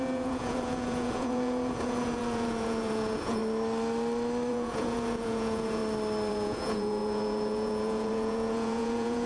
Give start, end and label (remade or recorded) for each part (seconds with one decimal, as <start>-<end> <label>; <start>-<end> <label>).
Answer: 0.0-3.4 remade; 3.4-4.5 recorded; 4.5-5.8 remade; 5.8-6.3 recorded; 6.3-9.3 remade